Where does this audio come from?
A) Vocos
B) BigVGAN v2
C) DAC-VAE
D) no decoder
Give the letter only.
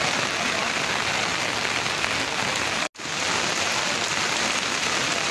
D